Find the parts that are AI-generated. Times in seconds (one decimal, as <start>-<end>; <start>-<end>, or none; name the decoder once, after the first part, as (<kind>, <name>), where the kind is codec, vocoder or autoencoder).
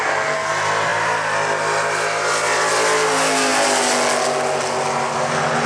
0.0-0.5 (codec, SNAC)